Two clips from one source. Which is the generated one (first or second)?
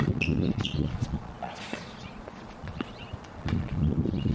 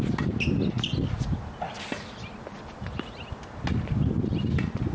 first